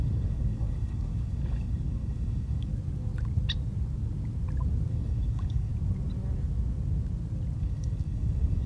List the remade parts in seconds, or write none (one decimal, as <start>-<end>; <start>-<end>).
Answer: 0.0-2.7; 4.9-5.7; 7.6-8.7